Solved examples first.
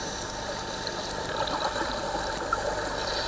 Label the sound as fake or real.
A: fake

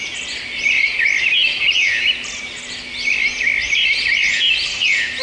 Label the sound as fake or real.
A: real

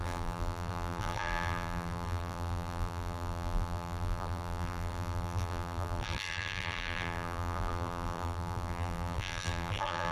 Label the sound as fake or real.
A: fake